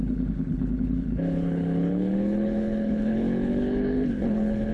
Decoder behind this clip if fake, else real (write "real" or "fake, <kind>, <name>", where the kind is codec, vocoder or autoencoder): fake, codec, HILCodec